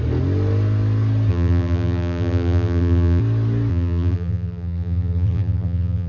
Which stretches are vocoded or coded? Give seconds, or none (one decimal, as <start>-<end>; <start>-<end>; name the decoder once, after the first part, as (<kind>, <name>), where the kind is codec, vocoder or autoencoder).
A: 1.3-3.2 (vocoder, BigVGAN v2); 3.7-6.1